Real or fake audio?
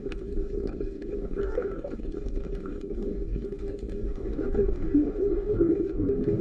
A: fake